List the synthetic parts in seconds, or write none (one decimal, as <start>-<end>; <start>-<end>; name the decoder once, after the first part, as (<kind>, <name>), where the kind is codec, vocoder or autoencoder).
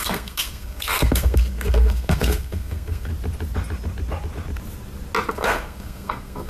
0.0-3.1 (codec, SNAC); 5.3-6.5